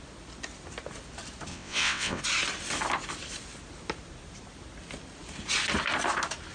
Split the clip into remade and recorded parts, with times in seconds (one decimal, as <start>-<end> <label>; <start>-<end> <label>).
0.0-1.5 recorded; 1.5-2.2 remade; 2.2-6.5 recorded